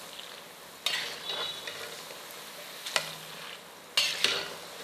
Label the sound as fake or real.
real